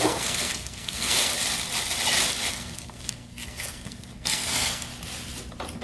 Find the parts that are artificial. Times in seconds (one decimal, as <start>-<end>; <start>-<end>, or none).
0.0-1.3; 2.5-4.9